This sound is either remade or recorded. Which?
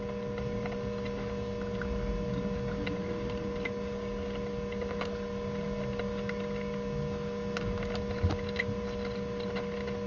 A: recorded